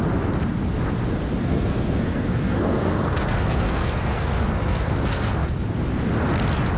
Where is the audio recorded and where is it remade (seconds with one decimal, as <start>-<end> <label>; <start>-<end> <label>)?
0.0-1.4 recorded; 1.4-5.5 remade; 5.5-6.8 recorded